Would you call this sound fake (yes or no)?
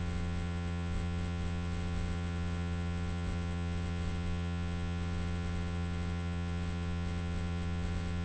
yes